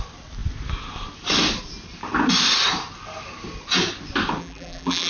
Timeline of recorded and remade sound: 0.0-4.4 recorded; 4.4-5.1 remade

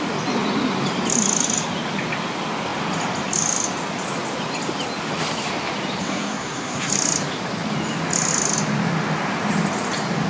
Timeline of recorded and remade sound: 0.0-6.0 recorded; 6.0-6.9 remade; 6.9-10.3 recorded